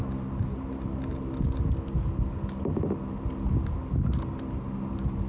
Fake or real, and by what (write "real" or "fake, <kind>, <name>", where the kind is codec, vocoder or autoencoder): real